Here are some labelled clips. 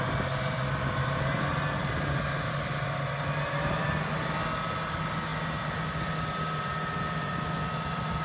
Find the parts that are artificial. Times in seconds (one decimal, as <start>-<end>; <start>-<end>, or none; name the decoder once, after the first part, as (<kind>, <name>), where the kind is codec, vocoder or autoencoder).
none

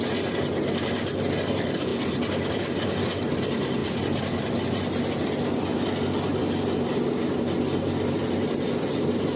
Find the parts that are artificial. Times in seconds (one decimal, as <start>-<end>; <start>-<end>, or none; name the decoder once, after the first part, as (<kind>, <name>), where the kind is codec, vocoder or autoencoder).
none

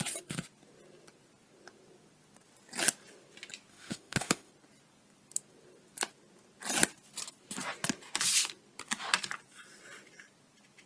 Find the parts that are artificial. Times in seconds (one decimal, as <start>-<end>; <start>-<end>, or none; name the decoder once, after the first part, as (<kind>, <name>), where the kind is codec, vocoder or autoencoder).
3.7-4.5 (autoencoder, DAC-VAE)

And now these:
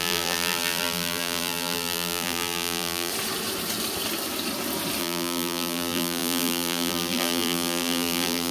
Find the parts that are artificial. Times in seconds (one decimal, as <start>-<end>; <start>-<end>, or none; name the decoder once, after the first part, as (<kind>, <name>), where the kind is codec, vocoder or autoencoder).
0.0-3.1 (vocoder, BigVGAN v2); 5.0-8.5

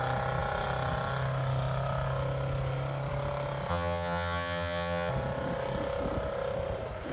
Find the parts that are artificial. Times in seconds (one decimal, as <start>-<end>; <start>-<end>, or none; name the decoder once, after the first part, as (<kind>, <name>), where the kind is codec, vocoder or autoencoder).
3.7-5.1 (vocoder, HiFi-GAN)

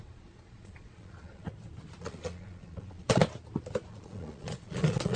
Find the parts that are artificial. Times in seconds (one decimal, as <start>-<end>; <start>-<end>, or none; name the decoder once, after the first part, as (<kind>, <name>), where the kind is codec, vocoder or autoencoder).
0.0-1.5 (vocoder, Vocos); 2.0-3.2; 3.9-5.2

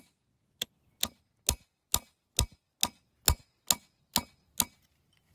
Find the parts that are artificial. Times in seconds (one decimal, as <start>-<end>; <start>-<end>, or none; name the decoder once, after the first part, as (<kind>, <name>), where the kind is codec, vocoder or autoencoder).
none